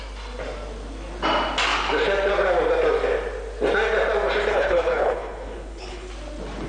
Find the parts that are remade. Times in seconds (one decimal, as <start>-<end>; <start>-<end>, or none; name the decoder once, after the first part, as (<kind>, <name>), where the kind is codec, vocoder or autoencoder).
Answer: 4.5-6.1 (codec, HILCodec)